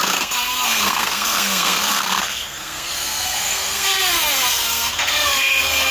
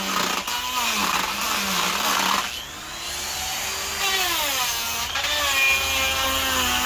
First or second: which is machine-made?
first